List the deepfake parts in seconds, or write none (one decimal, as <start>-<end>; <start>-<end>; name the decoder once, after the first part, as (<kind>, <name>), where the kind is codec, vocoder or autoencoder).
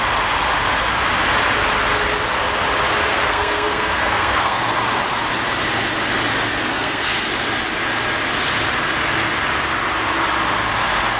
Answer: 3.1-4.6 (codec, SNAC); 6.7-7.3